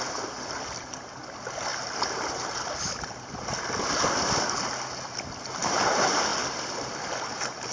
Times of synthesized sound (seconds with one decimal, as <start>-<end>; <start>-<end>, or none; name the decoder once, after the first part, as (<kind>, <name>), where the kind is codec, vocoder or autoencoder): none